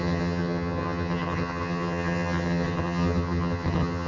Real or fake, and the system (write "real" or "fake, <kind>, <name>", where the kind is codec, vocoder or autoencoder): fake, vocoder, HiFi-GAN